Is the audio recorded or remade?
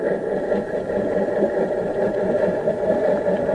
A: recorded